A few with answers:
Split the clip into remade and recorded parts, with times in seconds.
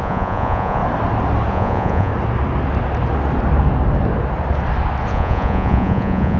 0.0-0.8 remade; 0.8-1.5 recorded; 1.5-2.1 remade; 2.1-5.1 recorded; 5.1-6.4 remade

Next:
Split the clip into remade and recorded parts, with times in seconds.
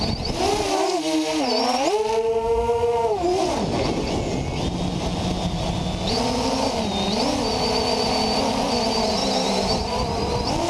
0.0-9.2 recorded; 9.2-9.8 remade; 9.8-10.7 recorded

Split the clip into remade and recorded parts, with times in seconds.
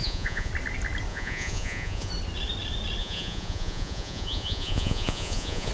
0.0-0.5 remade; 0.5-1.1 recorded; 1.1-2.1 remade; 2.1-3.0 recorded; 3.0-5.7 remade